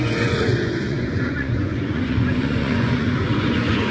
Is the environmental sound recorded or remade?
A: remade